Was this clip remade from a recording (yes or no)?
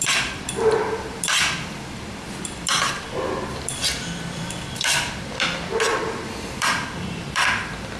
yes